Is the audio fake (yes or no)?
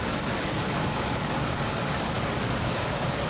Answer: yes